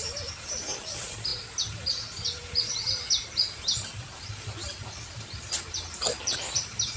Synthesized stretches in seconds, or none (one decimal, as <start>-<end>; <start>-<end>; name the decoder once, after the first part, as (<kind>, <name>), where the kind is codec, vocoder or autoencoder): none